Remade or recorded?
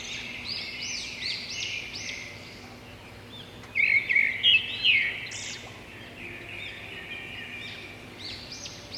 recorded